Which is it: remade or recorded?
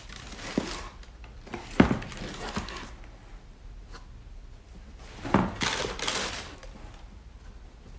recorded